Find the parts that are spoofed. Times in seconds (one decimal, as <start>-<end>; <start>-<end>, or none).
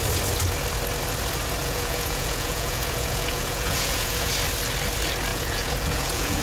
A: 1.6-4.3; 5.3-6.4